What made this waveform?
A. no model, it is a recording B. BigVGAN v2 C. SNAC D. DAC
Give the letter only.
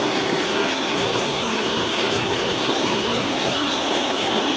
C